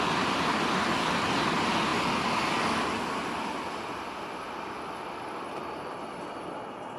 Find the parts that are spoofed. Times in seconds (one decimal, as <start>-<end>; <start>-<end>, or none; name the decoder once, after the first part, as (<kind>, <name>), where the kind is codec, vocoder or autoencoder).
none